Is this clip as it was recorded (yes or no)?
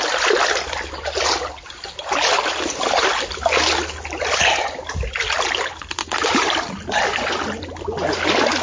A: yes